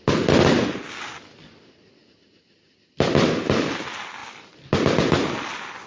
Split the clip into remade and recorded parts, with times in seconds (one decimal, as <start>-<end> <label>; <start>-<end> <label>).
0.0-5.9 recorded